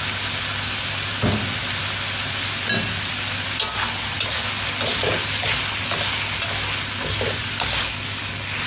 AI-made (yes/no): no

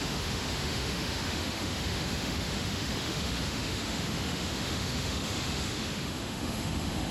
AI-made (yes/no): yes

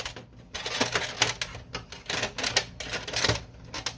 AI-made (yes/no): no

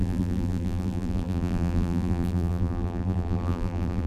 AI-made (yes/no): yes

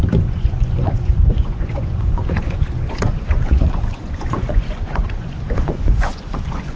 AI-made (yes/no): yes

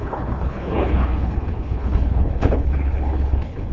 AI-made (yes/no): yes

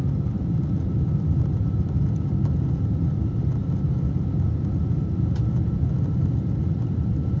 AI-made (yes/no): no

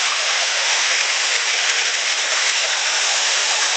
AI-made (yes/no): yes